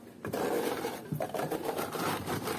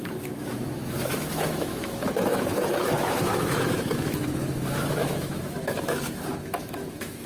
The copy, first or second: second